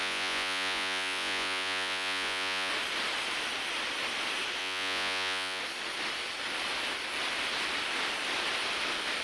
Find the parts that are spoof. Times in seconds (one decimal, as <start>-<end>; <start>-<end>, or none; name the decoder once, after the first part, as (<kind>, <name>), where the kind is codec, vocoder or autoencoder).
0.0-2.7 (vocoder, Vocos); 4.6-5.6